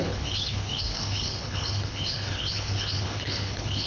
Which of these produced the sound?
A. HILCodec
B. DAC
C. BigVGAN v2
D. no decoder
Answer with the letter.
A